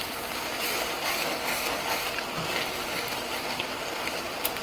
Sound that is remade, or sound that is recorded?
recorded